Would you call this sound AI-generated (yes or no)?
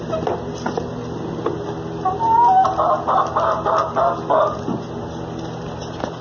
no